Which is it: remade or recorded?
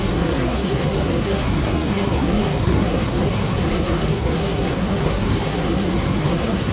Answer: remade